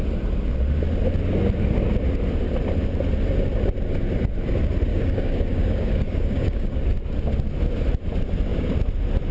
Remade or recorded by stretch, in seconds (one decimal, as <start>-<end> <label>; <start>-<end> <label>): 0.0-4.9 recorded; 4.9-6.8 remade; 6.8-9.3 recorded